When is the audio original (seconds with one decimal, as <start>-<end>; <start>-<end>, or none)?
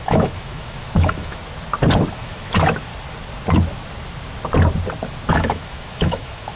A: 1.4-2.1; 2.9-5.3